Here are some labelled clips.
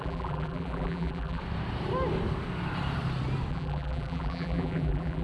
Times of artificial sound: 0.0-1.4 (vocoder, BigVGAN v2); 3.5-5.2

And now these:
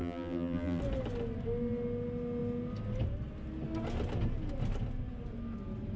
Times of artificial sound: 0.0-0.8 (vocoder, BigVGAN v2)